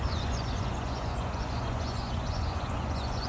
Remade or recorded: remade